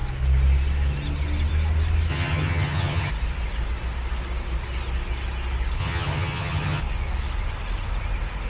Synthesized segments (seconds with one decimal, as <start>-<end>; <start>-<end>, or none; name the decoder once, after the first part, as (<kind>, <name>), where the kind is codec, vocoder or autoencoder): 2.1-3.1 (vocoder, HiFi-GAN); 5.8-6.8